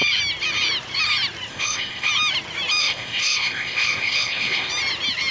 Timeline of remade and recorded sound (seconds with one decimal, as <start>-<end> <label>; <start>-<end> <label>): 0.0-1.5 recorded; 1.5-2.1 remade; 2.1-2.8 recorded; 2.8-4.7 remade; 4.7-5.3 recorded